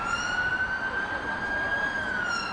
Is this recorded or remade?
recorded